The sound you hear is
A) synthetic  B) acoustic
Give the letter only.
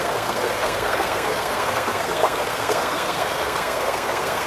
A